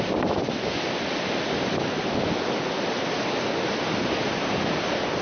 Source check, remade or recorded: recorded